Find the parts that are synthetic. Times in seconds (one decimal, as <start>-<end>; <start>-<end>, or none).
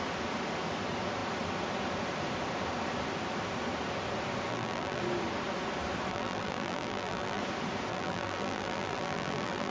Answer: 4.5-5.0; 6.1-7.4; 7.9-9.7